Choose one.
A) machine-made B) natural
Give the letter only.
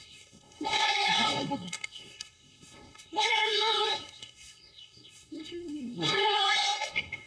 A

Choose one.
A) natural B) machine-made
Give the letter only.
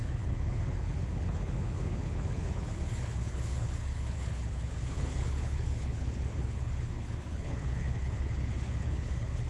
B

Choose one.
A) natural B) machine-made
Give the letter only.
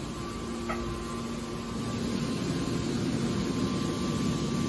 A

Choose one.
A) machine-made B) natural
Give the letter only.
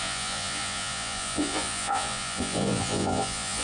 A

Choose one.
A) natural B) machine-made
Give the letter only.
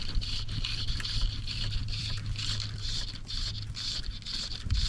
B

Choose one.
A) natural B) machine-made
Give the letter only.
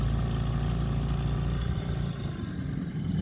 A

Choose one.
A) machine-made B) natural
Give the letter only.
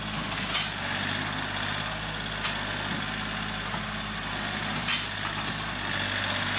B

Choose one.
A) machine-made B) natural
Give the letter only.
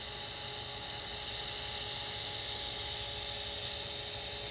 B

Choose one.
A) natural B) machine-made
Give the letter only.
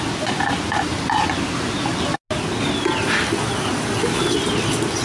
A